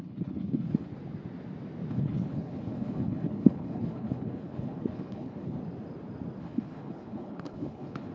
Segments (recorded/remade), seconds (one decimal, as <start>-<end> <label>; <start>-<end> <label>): 0.0-0.9 remade; 0.9-1.9 recorded; 1.9-5.6 remade; 5.6-6.4 recorded; 6.4-8.1 remade

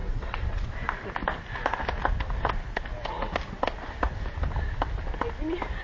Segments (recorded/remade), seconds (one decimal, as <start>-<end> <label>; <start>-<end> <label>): 0.0-0.7 remade; 0.7-5.8 recorded

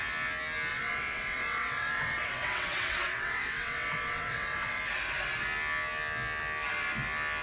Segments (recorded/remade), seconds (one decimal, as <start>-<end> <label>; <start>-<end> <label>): 0.0-0.7 recorded; 0.7-4.8 remade; 4.8-7.4 recorded